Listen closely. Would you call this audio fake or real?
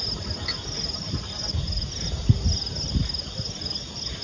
real